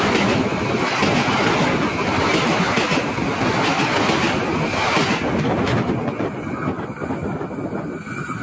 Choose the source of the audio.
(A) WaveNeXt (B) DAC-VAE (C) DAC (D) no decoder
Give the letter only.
D